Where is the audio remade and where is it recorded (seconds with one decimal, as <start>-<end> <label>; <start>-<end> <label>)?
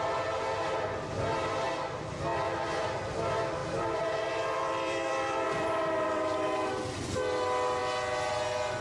0.0-2.3 recorded; 2.3-3.1 remade; 3.1-3.6 recorded; 3.6-6.7 remade; 6.7-8.8 recorded